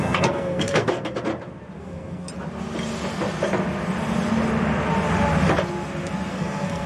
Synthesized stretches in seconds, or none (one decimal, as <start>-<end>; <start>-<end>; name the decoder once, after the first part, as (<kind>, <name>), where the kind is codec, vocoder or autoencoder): 0.0-1.3 (codec, SNAC); 1.8-2.3; 6.3-6.9

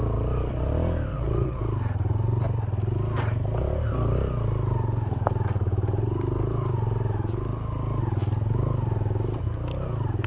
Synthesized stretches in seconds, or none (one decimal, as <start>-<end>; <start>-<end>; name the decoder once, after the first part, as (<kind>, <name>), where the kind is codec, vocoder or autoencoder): 1.1-1.6 (vocoder, Vocos)

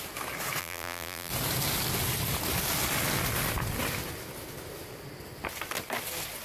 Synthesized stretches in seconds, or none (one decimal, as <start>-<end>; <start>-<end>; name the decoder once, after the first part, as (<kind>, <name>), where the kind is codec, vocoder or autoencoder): 0.6-1.3 (vocoder, BigVGAN v2)

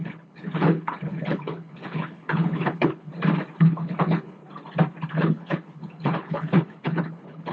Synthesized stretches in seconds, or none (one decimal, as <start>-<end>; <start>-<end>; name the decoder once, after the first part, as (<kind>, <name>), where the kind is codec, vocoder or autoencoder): 0.0-3.1 (codec, HILCodec); 3.6-4.4; 5.1-7.5

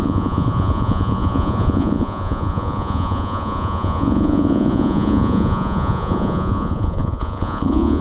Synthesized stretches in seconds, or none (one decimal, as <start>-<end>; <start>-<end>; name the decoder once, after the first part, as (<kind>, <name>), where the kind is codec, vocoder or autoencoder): 0.0-8.0 (vocoder, Vocos)

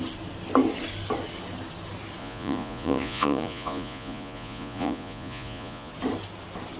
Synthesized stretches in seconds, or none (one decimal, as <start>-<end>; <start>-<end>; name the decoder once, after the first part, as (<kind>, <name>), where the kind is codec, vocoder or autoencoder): 2.2-5.9 (vocoder, Vocos)

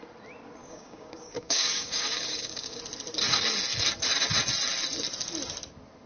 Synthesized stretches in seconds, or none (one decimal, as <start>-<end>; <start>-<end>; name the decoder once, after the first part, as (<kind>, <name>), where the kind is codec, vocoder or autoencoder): 0.6-2.8 (codec, DAC)

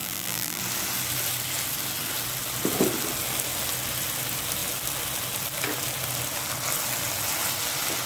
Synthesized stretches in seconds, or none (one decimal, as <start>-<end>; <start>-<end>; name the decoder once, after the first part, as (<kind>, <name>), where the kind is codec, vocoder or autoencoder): 0.0-0.6 (vocoder, BigVGAN v2)